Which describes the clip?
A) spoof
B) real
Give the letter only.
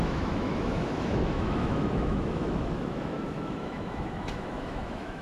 A